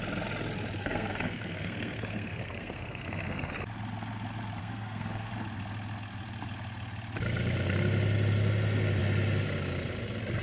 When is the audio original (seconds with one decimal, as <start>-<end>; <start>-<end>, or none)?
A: 0.0-0.8; 3.5-4.6; 5.3-10.4